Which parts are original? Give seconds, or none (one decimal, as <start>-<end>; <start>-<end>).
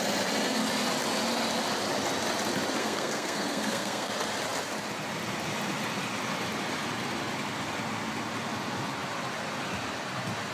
0.0-2.8; 4.1-10.5